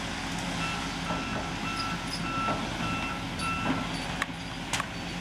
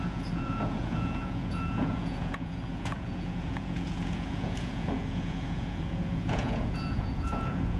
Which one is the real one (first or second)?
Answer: first